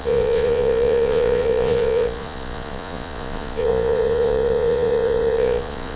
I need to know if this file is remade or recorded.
remade